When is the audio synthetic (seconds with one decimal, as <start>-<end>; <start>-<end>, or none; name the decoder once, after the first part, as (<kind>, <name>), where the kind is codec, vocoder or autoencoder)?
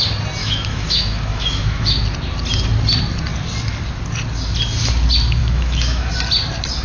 0.4-2.0 (autoencoder, DAC-VAE); 5.4-6.1